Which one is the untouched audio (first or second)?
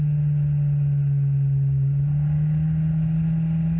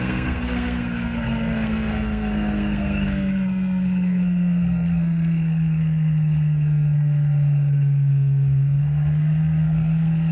first